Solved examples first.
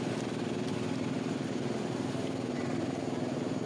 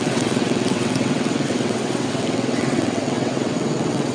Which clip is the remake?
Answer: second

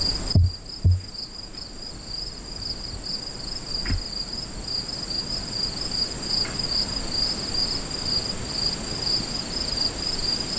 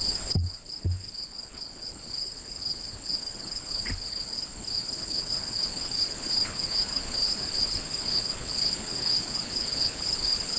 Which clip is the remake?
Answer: second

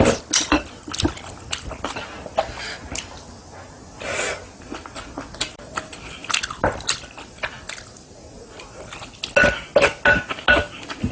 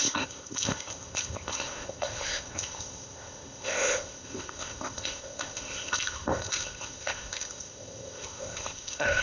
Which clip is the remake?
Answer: second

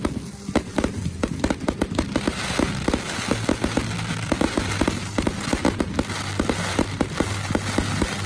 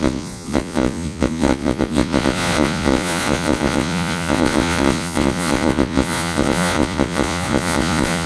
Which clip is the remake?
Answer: second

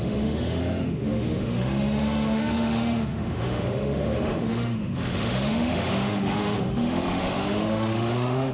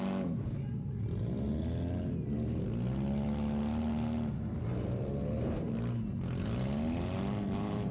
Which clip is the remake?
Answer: first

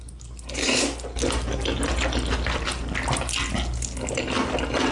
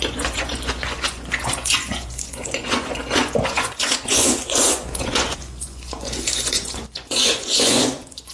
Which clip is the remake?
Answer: second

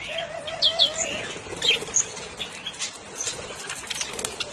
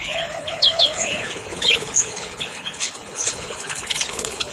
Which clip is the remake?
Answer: second